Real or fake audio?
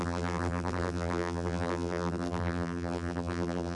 fake